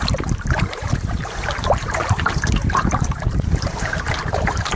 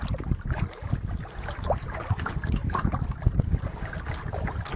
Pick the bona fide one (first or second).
second